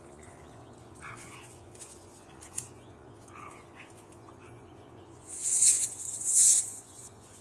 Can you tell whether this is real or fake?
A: fake